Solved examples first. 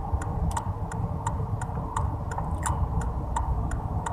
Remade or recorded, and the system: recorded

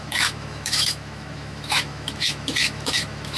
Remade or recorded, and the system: remade, autoencoder, DAC-VAE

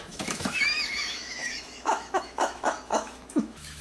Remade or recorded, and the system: remade, autoencoder, DAC-VAE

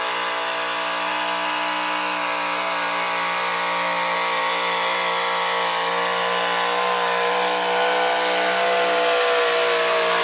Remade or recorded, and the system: recorded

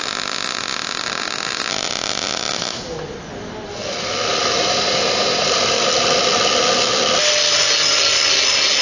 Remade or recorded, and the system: recorded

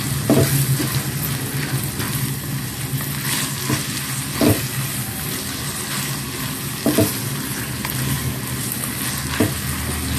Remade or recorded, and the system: recorded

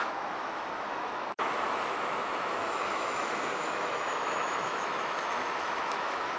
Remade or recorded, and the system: remade, autoencoder, DAC-VAE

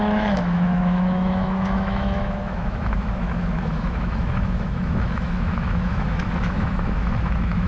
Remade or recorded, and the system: remade, autoencoder, DAC-VAE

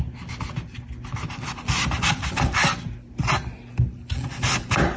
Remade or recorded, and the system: recorded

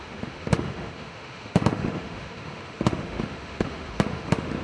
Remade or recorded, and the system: remade, autoencoder, DAC-VAE